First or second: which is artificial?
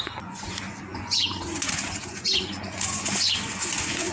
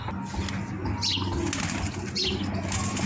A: first